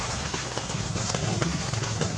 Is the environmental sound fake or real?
fake